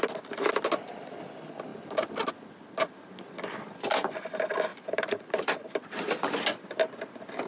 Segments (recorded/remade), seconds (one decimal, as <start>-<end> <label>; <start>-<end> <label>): 0.0-4.7 recorded; 4.7-5.7 remade; 5.7-7.5 recorded